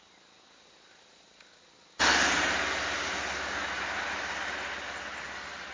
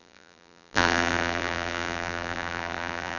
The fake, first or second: second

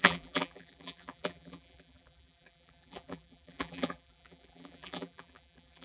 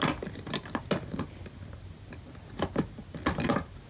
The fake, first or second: first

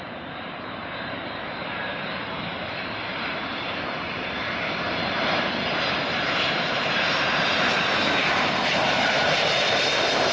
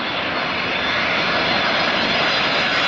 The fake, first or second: first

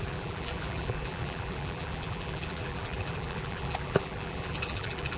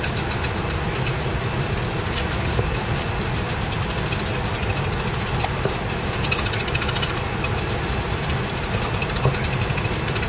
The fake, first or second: first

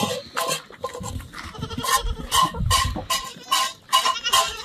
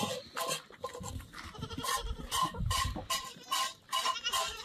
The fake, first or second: second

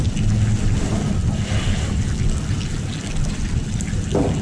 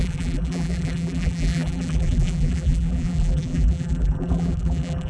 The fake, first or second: second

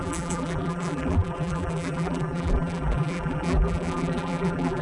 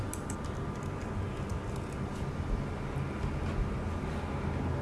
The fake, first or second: first